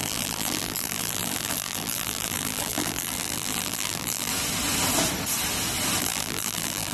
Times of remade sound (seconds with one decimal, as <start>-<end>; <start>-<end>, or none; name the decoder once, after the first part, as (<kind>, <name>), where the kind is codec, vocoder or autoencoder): 0.0-4.3 (vocoder, BigVGAN v2); 6.0-6.9

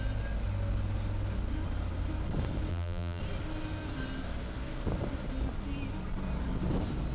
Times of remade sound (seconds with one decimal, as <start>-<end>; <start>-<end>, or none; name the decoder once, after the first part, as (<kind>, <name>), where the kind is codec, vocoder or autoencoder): 2.7-3.2 (vocoder, BigVGAN v2)

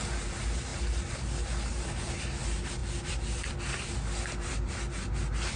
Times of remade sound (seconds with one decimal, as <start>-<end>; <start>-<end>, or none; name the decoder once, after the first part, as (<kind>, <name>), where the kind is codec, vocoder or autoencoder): 0.7-2.4 (vocoder, BigVGAN v2); 2.8-3.5

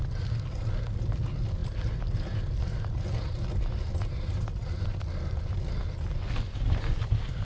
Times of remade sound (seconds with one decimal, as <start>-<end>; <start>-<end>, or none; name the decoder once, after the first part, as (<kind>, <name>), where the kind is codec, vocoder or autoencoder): none

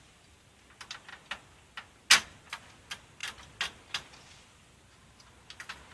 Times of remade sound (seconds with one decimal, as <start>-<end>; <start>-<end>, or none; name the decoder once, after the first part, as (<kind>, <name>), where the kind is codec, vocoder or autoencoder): none

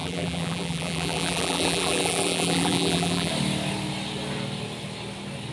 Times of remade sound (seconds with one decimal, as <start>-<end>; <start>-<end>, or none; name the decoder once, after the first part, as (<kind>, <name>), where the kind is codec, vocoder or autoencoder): 0.0-3.3 (vocoder, BigVGAN v2)

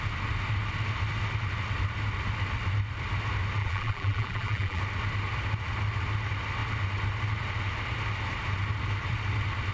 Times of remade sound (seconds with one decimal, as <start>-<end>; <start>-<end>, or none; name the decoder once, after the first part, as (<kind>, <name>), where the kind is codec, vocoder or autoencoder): 3.6-4.8 (vocoder, BigVGAN v2)

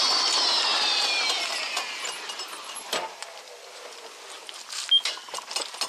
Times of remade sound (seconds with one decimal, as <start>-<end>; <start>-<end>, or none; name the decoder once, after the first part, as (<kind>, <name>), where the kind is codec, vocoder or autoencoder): none